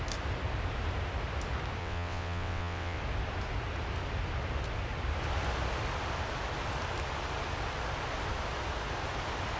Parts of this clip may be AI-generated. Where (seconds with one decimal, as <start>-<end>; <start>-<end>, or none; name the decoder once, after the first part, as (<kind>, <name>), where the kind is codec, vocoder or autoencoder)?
1.8-3.0 (vocoder, WaveNeXt)